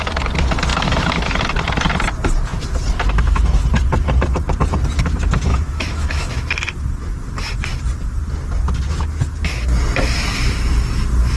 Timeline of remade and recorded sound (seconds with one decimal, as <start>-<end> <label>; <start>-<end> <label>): 0.0-0.7 recorded; 0.7-1.4 remade; 1.4-5.5 recorded; 5.5-6.5 remade; 6.5-11.4 recorded